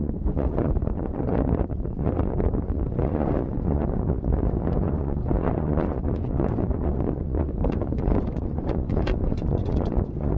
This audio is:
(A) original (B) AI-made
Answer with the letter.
B